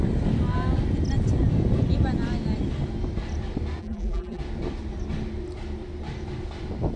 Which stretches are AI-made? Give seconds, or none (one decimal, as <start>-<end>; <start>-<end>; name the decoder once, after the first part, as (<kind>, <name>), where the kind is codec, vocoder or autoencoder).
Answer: 3.8-4.4 (vocoder, BigVGAN v2)

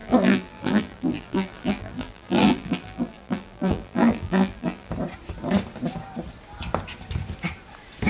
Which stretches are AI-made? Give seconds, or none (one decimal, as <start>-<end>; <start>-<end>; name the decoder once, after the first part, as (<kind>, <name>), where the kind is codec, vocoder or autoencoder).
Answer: 0.0-4.9 (vocoder, BigVGAN v2)

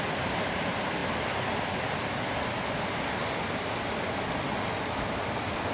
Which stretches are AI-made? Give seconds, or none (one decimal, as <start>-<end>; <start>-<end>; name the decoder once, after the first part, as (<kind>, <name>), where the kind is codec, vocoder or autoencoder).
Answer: none